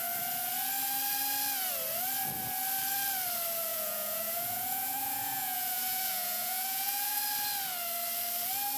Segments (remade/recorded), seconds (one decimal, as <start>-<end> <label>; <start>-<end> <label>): 0.0-3.7 recorded; 3.7-7.2 remade; 7.2-8.8 recorded